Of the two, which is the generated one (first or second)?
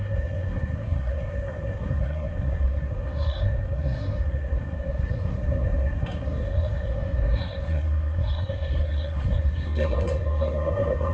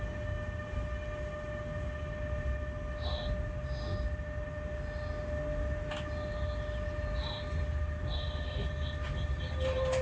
first